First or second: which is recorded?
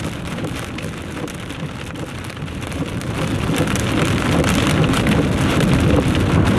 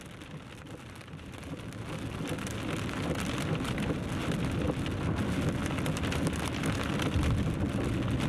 second